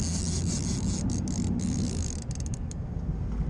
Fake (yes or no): no